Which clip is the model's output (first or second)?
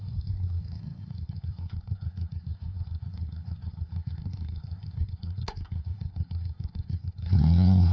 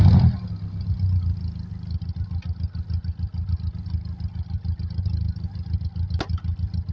first